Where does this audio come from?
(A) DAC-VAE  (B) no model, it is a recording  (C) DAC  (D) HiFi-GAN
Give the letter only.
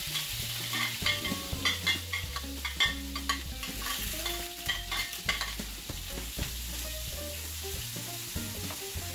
B